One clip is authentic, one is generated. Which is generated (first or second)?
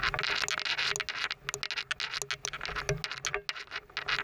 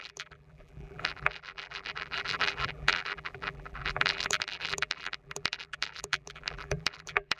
second